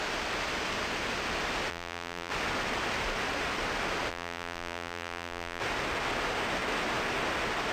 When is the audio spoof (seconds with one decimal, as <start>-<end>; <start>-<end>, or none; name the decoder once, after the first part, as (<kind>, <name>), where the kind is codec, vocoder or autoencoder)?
1.7-2.3 (vocoder, BigVGAN v2); 4.1-5.6